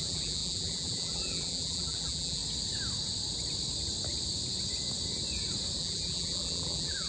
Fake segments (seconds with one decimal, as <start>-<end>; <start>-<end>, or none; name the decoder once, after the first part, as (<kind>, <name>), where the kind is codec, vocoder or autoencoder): 0.0-2.4 (vocoder, BigVGAN v2); 5.8-7.1